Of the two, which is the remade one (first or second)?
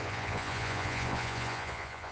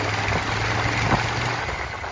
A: first